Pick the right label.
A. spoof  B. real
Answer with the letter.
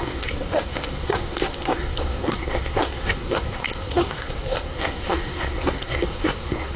A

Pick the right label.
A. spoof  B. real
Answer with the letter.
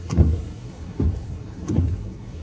A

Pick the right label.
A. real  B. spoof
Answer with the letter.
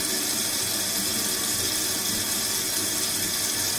A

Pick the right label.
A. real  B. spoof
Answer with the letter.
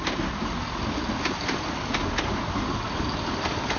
A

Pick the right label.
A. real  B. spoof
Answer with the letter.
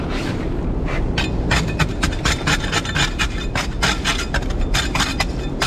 A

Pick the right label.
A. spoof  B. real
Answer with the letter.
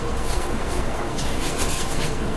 A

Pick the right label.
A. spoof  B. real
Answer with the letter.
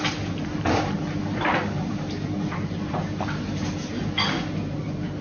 B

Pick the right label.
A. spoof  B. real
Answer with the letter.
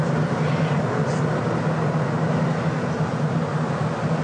B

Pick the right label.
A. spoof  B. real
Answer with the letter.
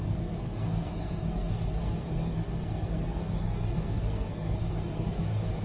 A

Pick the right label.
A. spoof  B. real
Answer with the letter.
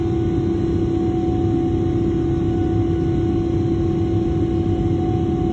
B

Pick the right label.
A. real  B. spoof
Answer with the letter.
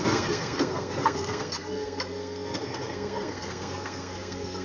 B